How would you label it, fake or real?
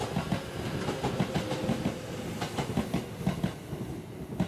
real